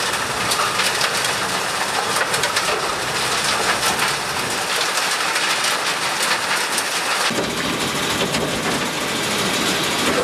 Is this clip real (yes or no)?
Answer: yes